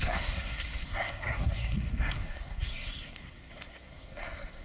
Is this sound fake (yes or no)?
yes